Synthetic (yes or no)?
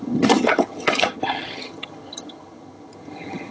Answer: yes